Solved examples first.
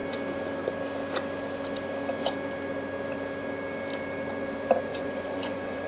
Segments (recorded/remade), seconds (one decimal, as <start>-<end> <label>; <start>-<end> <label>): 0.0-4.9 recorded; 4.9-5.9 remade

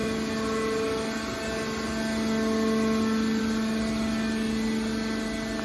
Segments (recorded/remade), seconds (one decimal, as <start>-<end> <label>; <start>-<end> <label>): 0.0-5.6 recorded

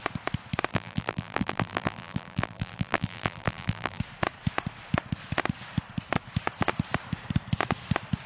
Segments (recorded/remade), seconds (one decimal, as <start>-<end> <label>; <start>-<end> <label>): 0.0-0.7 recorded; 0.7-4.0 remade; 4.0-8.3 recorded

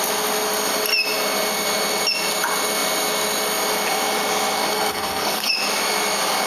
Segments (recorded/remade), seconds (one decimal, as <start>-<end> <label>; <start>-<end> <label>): 0.0-4.7 recorded; 4.7-5.5 remade; 5.5-6.5 recorded

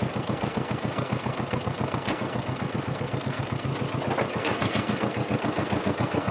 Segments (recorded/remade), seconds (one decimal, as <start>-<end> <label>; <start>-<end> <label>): 0.0-3.7 remade; 3.7-4.4 recorded; 4.4-6.3 remade